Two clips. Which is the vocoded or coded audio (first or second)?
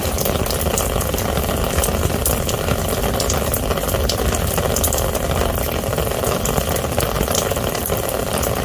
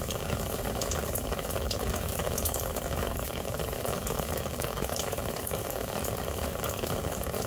second